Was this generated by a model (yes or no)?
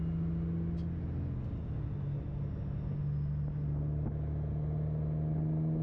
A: no